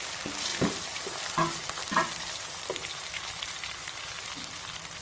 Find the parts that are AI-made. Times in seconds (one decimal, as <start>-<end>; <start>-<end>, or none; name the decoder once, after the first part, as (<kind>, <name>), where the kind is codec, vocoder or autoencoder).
none